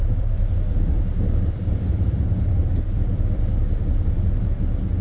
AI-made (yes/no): yes